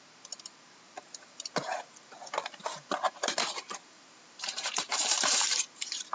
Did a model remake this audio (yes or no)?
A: yes